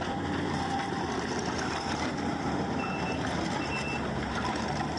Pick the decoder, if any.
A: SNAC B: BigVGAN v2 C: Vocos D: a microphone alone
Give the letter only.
B